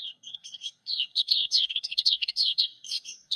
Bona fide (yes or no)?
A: no